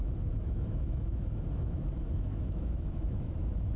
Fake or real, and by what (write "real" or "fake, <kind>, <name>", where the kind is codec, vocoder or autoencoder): fake, autoencoder, DAC-VAE